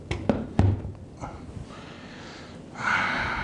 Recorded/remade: recorded